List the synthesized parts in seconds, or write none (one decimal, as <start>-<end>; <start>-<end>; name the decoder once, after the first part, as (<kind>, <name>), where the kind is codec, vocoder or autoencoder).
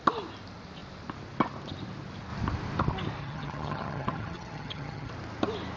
3.2-5.1 (vocoder, HiFi-GAN)